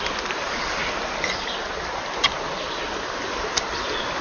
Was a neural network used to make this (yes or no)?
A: no